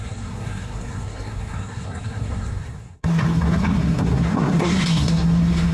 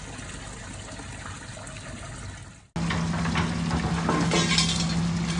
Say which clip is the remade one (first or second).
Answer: first